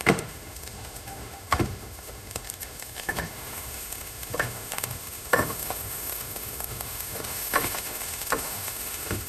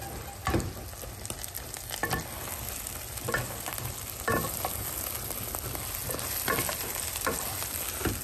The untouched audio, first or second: second